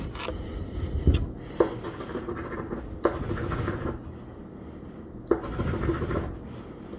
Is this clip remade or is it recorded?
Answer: recorded